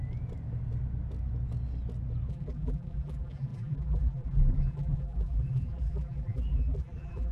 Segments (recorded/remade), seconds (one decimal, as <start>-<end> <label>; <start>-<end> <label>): 0.0-2.3 recorded; 2.3-7.3 remade